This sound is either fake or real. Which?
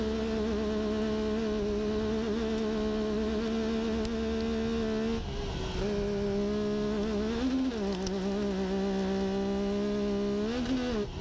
real